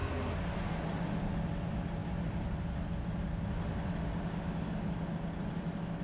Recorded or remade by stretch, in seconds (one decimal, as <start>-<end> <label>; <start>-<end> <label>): 0.0-6.0 recorded